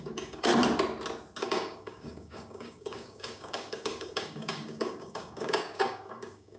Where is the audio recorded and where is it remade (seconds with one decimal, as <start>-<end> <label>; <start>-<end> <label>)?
0.0-0.5 remade; 0.5-1.4 recorded; 1.4-6.6 remade